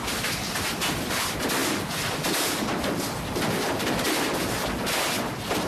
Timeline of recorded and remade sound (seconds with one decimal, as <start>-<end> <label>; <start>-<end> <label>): 0.0-1.6 remade; 1.6-3.8 recorded; 3.8-5.7 remade